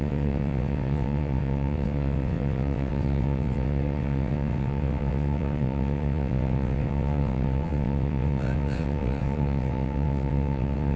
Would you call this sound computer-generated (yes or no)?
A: yes